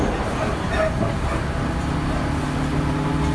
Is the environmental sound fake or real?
real